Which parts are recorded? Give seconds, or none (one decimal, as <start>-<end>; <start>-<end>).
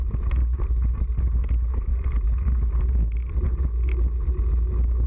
0.0-5.1